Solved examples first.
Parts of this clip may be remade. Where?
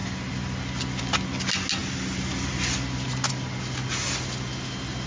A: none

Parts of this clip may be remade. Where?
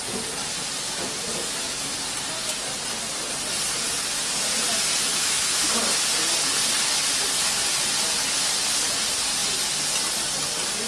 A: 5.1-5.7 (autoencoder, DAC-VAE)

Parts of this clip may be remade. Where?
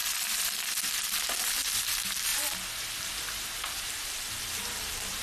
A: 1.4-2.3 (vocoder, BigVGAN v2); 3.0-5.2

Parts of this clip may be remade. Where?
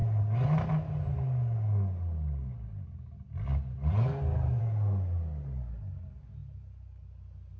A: none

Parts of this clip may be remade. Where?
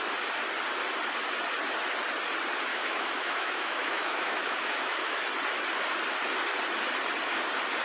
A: 2.7-5.2 (autoencoder, DAC-VAE)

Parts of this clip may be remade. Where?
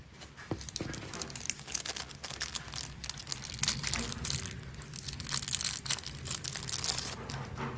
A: none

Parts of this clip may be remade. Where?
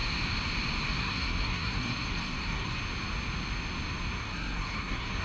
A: 1.0-2.8 (codec, SNAC); 4.2-5.2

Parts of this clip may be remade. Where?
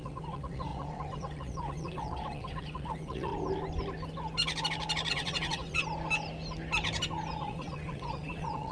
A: 0.0-3.3 (vocoder, WaveNeXt); 5.1-5.8; 7.4-8.7